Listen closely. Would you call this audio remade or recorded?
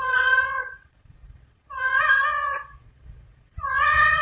remade